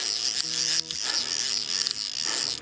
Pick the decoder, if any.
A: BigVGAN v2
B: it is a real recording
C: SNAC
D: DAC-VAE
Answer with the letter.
B